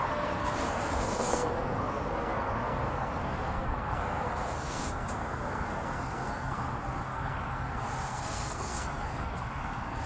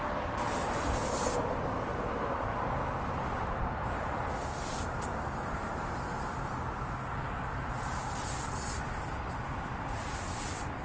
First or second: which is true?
second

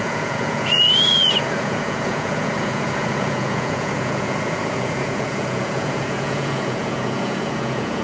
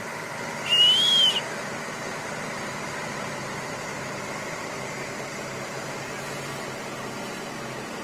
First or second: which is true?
second